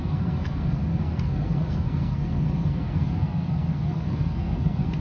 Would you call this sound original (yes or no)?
no